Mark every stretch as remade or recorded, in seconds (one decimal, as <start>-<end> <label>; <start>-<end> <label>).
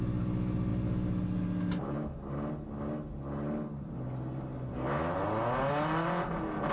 0.0-6.7 recorded